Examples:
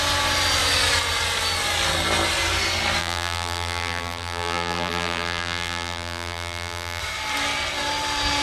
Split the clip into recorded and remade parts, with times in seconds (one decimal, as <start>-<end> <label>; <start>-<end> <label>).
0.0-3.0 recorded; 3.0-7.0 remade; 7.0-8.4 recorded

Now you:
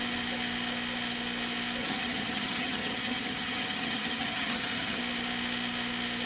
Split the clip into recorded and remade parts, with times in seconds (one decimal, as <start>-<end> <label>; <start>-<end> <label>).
0.0-1.8 recorded; 1.8-5.0 remade; 5.0-6.3 recorded

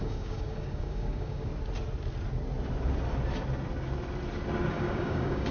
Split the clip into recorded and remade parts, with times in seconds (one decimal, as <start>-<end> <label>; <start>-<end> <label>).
0.0-1.5 remade; 1.5-4.7 recorded; 4.7-5.5 remade

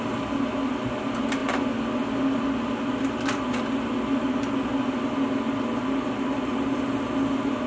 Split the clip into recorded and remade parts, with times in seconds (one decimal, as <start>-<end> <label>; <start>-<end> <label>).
0.0-7.7 recorded